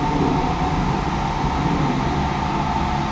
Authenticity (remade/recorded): recorded